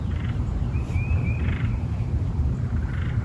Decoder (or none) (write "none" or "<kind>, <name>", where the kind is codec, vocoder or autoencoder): vocoder, BigVGAN v2